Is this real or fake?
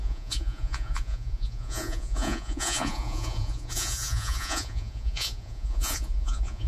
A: fake